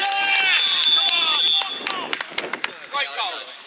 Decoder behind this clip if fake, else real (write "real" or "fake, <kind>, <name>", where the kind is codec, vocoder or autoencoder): real